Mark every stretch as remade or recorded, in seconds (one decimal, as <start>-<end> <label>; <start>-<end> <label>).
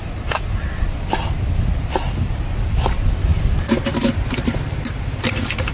0.0-5.7 recorded